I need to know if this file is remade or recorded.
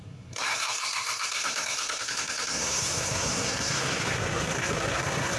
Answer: remade